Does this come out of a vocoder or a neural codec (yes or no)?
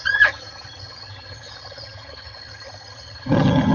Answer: yes